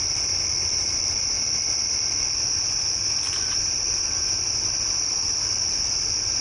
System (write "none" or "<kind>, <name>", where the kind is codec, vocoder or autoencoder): none